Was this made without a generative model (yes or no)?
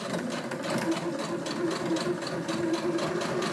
yes